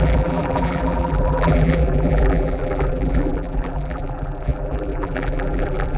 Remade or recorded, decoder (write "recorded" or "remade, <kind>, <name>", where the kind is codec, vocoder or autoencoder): remade, vocoder, BigVGAN v2